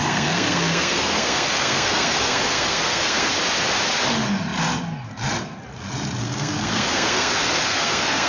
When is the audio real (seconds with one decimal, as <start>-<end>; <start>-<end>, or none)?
3.3-6.2